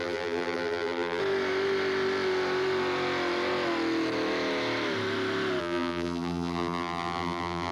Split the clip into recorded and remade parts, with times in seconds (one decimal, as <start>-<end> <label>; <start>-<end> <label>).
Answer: 0.0-1.2 remade; 1.2-5.6 recorded; 5.6-7.7 remade